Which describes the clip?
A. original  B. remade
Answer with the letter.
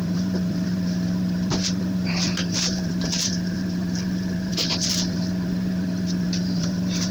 B